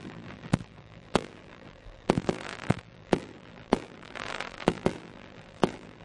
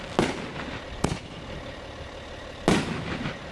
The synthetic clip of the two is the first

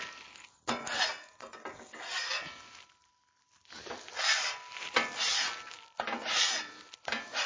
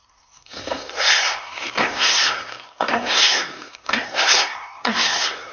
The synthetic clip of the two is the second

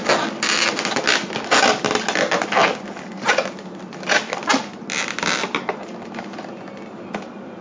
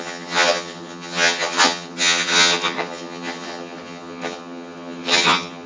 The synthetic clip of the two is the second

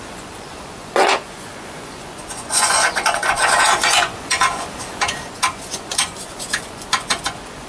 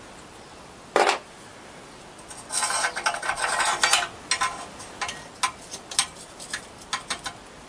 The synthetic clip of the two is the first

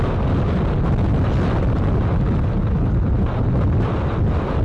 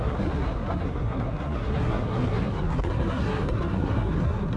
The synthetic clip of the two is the second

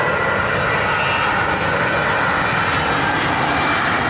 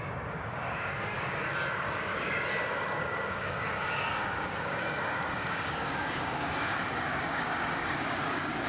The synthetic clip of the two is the second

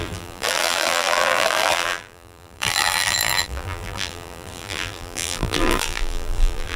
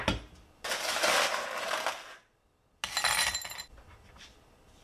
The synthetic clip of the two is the first